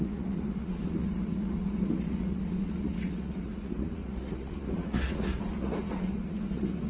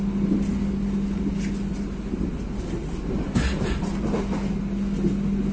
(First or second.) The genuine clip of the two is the second